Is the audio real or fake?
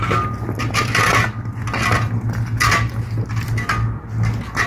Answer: real